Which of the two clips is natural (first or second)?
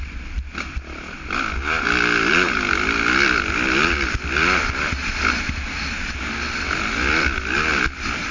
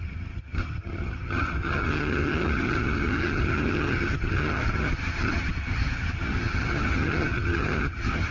first